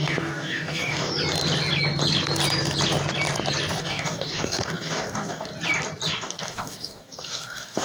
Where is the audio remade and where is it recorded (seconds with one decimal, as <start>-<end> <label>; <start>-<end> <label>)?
0.0-1.1 remade; 1.1-3.8 recorded; 3.8-5.5 remade; 5.5-6.1 recorded; 6.1-7.8 remade